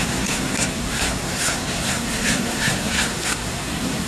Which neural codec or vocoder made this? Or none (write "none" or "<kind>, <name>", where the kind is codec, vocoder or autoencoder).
codec, SNAC